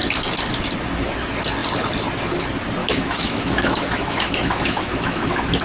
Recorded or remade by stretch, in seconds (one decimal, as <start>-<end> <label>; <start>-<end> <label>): 0.0-2.8 recorded; 2.8-5.6 remade